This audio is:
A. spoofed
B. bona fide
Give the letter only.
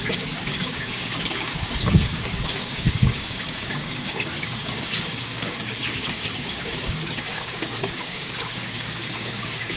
A